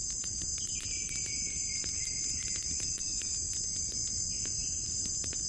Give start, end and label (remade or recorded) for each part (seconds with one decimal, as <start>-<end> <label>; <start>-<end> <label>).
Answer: 0.0-4.6 recorded; 4.6-5.1 remade; 5.1-5.5 recorded